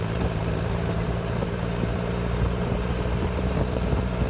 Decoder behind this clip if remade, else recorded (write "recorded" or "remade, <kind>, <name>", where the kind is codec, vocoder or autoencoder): remade, vocoder, BigVGAN v2